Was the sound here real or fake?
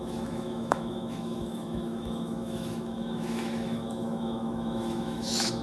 fake